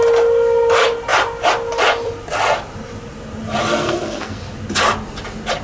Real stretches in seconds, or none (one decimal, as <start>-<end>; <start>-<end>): 0.0-3.7; 4.4-5.6